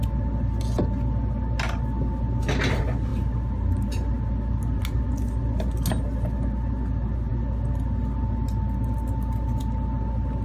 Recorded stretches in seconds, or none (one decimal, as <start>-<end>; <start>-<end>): 0.0-10.4